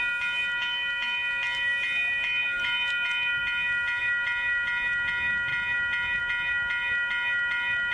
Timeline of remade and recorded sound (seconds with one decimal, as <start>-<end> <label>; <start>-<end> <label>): 0.0-7.9 recorded